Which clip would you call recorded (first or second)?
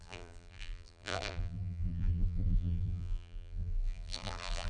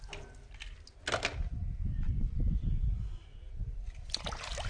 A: second